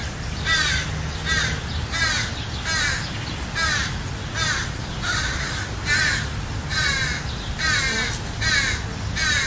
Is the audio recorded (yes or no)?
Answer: yes